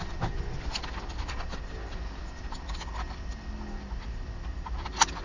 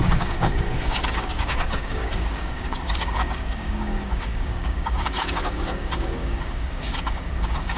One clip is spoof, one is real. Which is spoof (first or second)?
second